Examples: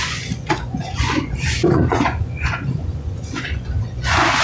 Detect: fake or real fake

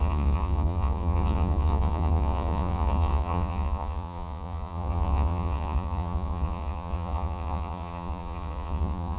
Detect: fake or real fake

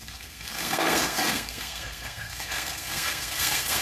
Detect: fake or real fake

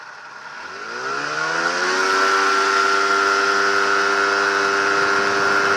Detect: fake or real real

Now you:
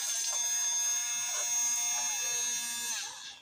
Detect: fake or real real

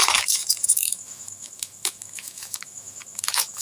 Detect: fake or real fake